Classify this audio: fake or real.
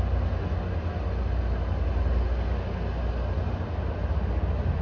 real